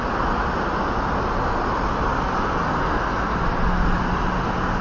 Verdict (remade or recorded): recorded